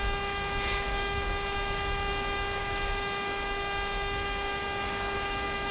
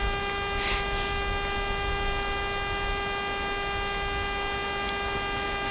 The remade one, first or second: first